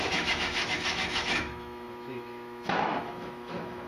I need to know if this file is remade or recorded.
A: remade